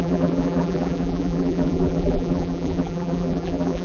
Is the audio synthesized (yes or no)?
yes